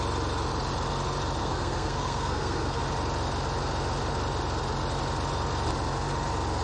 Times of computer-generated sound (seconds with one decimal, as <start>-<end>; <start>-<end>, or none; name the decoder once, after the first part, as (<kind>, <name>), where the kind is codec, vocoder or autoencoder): 1.4-2.8 (codec, SNAC)